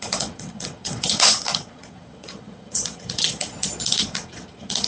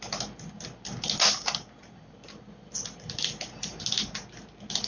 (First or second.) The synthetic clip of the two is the first